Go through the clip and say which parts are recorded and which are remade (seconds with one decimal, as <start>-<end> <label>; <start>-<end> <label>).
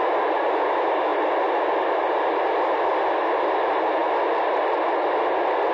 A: 0.0-5.7 recorded